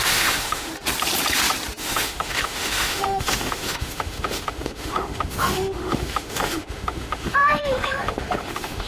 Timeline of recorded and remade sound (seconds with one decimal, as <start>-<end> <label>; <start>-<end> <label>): 0.0-0.7 remade; 0.7-1.8 recorded; 1.8-8.9 remade